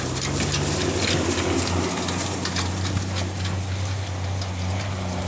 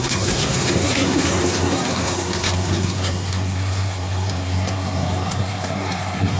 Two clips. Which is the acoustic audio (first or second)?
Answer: first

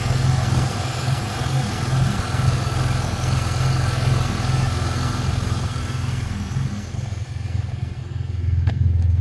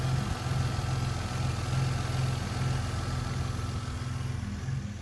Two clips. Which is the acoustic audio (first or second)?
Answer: second